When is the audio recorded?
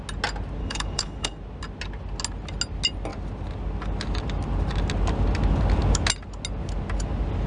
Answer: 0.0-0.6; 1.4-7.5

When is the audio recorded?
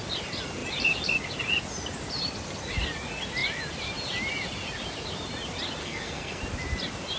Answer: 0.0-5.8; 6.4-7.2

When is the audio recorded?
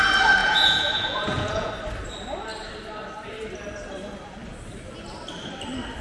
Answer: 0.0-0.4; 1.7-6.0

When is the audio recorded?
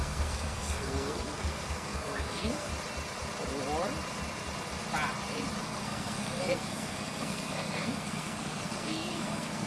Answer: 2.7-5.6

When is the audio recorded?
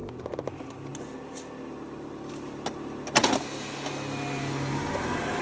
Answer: 0.0-5.4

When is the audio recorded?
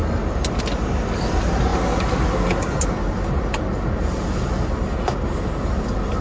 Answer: 0.0-6.2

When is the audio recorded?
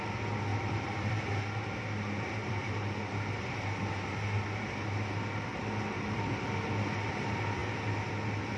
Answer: 0.0-0.5; 1.3-2.4; 4.4-5.5; 6.5-8.6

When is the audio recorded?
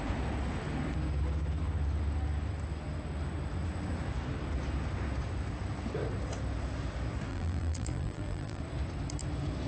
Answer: 0.0-7.3; 8.6-9.7